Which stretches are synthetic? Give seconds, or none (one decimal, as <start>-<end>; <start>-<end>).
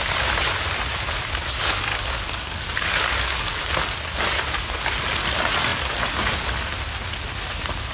1.9-3.6